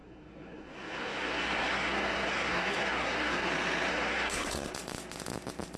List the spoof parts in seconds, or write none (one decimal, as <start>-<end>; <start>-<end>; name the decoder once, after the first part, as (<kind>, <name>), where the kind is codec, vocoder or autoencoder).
0.0-3.5 (codec, SNAC); 3.9-4.7